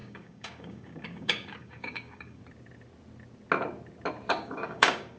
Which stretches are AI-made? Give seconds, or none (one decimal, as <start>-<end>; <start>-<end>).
0.0-2.4; 4.3-5.2